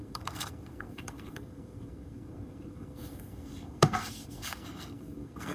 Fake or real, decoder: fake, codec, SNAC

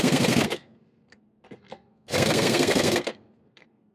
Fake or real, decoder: fake, codec, SNAC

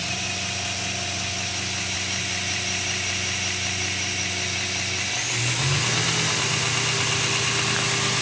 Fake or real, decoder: real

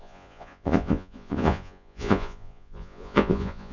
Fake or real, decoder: fake, vocoder, Vocos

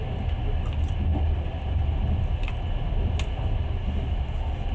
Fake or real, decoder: real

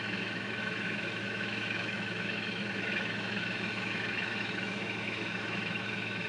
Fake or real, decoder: fake, autoencoder, DAC-VAE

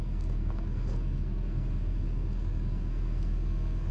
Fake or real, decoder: fake, codec, SNAC